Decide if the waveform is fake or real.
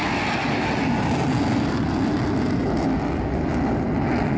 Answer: real